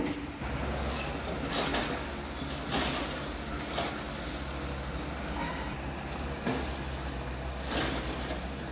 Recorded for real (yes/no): yes